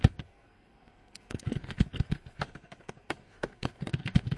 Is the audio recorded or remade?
remade